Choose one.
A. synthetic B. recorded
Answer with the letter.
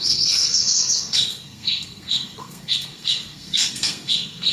A